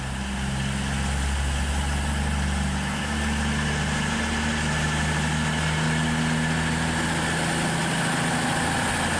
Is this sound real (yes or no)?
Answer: yes